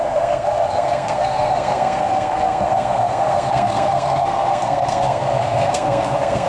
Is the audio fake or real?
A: fake